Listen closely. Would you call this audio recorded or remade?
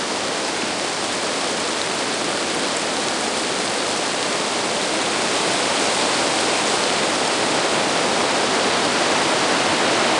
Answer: recorded